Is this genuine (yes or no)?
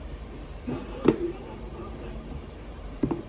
no